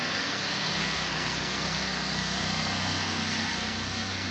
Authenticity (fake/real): fake